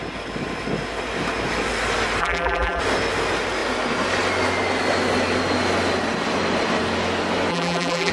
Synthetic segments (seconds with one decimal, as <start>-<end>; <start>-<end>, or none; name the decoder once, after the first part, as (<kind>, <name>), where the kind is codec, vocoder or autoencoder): 2.2-2.8 (vocoder, BigVGAN v2); 7.5-8.1